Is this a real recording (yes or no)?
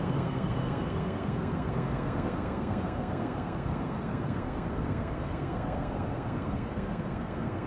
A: no